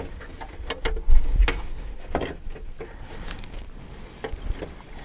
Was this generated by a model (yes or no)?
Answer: no